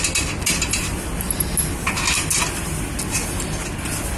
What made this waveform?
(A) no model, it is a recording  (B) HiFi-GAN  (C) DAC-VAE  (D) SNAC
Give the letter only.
A